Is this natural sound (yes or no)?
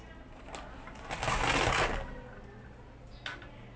yes